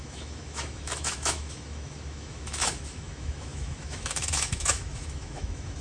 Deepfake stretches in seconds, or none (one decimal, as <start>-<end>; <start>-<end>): 0.0-5.8